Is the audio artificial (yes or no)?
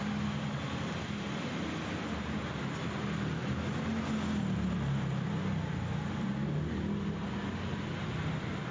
no